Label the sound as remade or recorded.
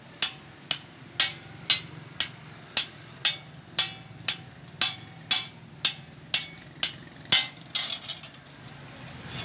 recorded